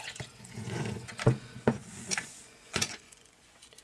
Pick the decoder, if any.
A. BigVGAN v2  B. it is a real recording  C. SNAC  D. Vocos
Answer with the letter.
D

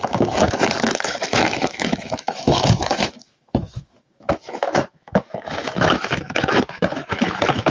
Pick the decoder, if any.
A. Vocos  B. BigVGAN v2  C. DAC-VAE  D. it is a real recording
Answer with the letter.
C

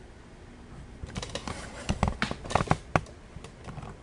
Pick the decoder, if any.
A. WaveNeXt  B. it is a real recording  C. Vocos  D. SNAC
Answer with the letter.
B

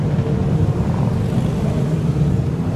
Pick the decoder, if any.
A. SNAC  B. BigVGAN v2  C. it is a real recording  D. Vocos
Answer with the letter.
C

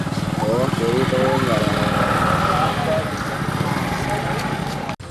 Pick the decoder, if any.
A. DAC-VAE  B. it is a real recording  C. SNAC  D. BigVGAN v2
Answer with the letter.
B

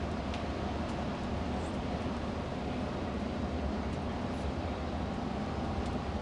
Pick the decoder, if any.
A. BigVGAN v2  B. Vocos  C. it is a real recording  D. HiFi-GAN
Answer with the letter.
C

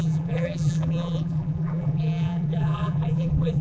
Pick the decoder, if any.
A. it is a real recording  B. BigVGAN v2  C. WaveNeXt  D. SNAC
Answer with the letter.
B